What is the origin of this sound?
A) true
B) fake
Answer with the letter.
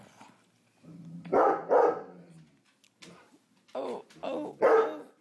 A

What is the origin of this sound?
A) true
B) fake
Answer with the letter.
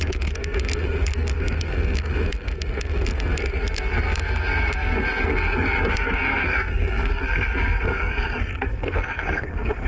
B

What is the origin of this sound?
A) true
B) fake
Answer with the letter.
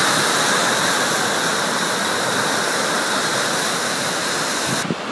A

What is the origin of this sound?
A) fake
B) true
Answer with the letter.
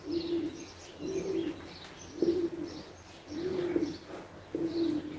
B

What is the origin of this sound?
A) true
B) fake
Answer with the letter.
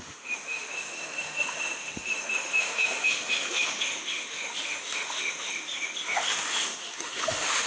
B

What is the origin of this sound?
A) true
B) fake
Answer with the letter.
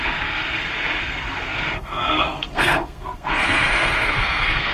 B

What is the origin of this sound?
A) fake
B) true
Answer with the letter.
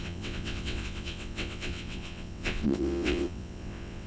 A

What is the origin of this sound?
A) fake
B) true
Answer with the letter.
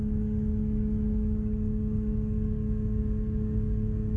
A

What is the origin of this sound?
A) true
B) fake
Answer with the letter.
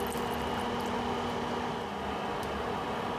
A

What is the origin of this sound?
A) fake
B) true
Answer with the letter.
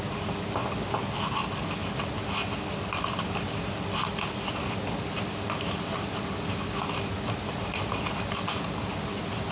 B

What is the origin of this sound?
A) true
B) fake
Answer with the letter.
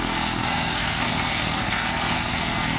B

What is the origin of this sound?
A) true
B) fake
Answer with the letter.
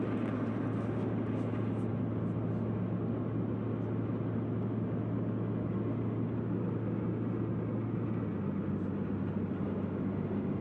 A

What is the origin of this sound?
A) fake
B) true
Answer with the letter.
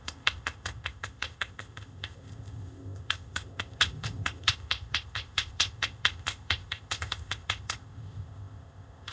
A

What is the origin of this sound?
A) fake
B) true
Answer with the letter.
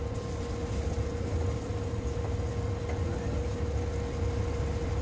B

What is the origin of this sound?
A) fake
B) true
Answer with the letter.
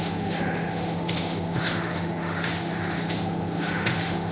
A